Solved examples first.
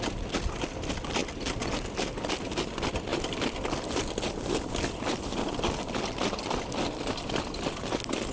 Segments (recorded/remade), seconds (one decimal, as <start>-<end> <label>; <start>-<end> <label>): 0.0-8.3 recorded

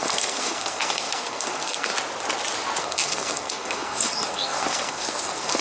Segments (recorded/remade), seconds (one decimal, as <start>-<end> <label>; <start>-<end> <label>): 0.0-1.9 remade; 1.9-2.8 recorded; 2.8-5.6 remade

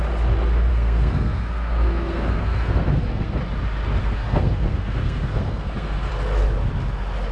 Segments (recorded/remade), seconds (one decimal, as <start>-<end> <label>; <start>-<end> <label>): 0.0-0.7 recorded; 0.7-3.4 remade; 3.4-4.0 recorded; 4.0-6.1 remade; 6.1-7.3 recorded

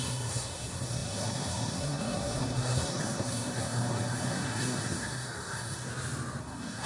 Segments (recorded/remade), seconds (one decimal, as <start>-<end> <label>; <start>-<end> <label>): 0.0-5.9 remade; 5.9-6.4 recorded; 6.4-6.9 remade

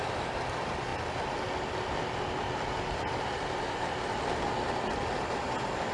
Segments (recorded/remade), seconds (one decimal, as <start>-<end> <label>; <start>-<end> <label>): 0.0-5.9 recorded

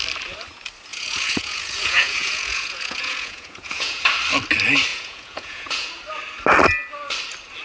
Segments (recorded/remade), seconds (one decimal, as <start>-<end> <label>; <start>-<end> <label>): 0.0-0.9 recorded; 0.9-4.0 remade; 4.0-4.9 recorded; 4.9-6.0 remade; 6.0-7.6 recorded

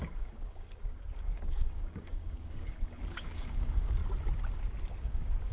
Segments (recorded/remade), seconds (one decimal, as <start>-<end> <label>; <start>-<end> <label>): 0.0-4.0 remade; 4.0-5.0 recorded; 5.0-5.5 remade

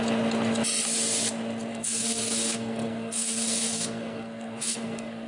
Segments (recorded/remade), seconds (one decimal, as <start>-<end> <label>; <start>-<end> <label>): 0.0-1.7 recorded; 1.7-5.3 remade